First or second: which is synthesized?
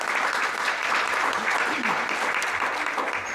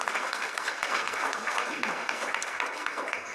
second